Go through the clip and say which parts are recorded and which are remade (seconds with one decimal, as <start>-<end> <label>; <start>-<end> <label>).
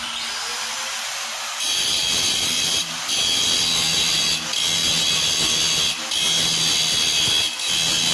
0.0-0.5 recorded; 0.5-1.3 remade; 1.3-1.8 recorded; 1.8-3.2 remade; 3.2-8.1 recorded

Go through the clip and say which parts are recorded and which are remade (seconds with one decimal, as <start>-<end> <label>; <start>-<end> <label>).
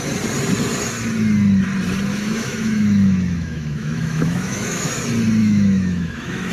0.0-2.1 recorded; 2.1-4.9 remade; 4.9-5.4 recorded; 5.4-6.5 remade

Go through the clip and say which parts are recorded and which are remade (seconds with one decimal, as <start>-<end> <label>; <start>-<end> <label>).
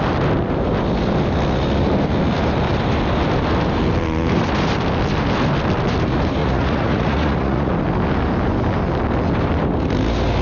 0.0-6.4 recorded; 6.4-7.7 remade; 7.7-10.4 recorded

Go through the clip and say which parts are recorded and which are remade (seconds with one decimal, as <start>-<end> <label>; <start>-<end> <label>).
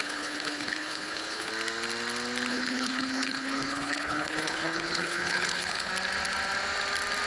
0.0-1.5 remade; 1.5-2.5 recorded; 2.5-5.9 remade; 5.9-7.3 recorded